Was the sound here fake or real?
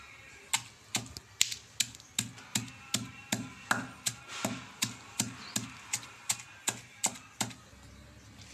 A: real